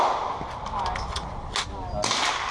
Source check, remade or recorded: recorded